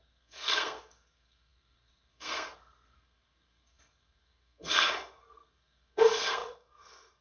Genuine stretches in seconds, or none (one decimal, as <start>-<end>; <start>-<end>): none